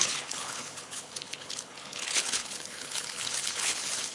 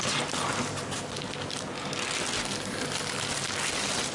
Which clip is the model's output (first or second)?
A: first